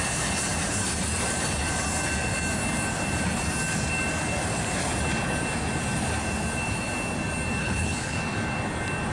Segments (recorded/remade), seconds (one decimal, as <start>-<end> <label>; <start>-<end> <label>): 0.0-7.6 recorded; 7.6-8.2 remade; 8.2-9.1 recorded